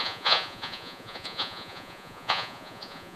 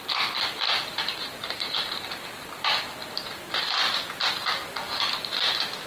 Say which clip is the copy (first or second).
first